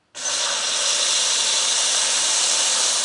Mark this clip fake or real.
real